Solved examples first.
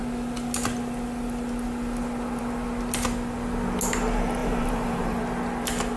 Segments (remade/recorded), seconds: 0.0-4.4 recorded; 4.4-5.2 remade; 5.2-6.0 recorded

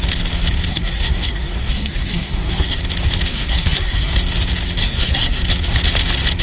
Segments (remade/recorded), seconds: 0.0-0.7 recorded; 0.7-2.8 remade; 2.8-3.3 recorded; 3.3-4.1 remade; 4.1-4.8 recorded; 4.8-5.4 remade; 5.4-6.4 recorded